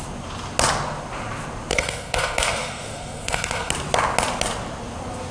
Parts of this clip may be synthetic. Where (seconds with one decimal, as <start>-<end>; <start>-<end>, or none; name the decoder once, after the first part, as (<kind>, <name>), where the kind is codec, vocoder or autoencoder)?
1.7-3.7 (codec, SNAC)